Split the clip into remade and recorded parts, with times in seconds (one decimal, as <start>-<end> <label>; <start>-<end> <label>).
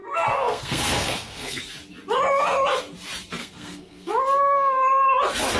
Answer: 0.0-1.6 remade; 1.6-3.4 recorded; 3.4-4.1 remade; 4.1-5.6 recorded